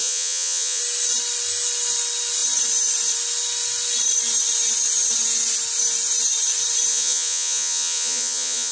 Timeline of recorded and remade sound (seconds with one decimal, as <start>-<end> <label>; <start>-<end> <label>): 0.0-0.8 remade; 0.8-6.9 recorded; 6.9-8.7 remade